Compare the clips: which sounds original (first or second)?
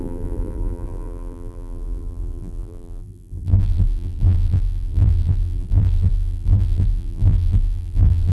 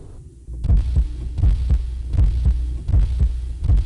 second